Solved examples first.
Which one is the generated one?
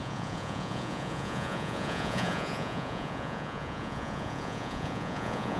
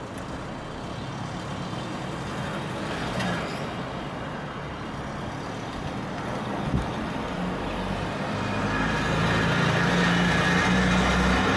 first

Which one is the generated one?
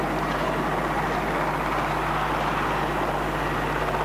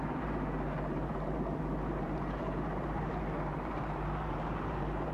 second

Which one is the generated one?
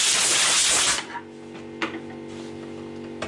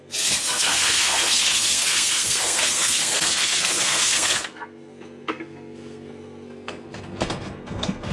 second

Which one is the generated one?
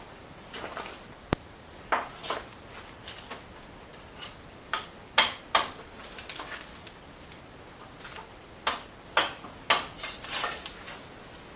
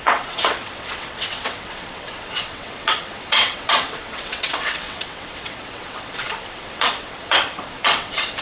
second